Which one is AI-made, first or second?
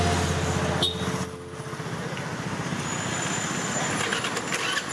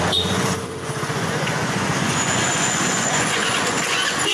second